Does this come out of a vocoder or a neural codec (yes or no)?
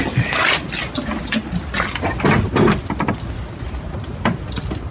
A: no